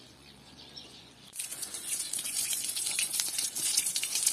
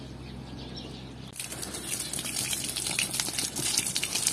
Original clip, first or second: second